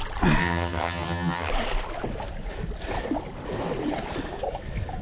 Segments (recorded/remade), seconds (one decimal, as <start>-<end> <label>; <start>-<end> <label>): 0.0-0.4 recorded; 0.4-1.5 remade; 1.5-5.0 recorded